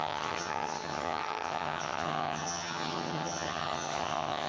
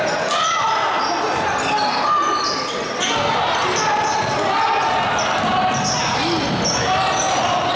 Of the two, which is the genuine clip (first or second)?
second